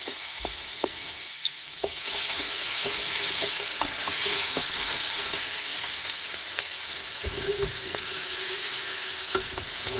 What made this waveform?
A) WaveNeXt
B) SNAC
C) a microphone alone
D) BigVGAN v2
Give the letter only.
B